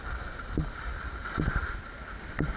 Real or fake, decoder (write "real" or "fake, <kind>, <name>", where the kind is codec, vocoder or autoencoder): real